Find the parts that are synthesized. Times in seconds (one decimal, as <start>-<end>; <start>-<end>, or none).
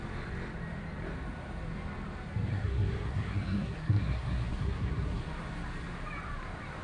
2.5-5.2